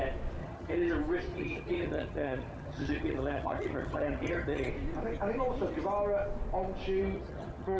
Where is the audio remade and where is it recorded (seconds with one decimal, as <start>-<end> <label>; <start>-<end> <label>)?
0.0-0.4 recorded; 0.4-0.9 remade; 0.9-1.3 recorded; 1.3-4.7 remade; 4.7-7.0 recorded; 7.0-7.8 remade